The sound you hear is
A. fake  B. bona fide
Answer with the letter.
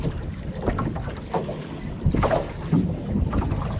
B